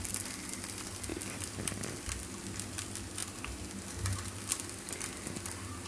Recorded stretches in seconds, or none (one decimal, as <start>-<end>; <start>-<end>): 0.0-5.9